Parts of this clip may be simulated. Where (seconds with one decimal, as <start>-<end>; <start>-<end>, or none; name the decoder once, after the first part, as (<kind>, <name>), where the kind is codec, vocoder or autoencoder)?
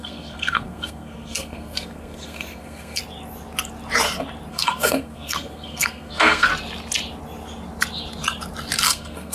0.0-3.0 (codec, SNAC); 4.5-6.5; 8.9-9.3